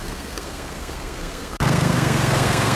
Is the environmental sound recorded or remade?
remade